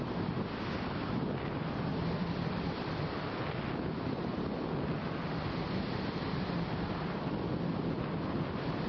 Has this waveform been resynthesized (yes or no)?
no